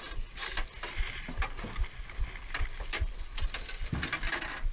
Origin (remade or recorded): recorded